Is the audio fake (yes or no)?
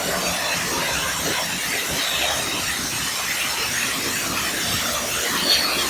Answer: no